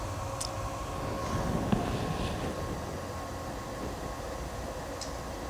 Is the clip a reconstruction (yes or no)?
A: no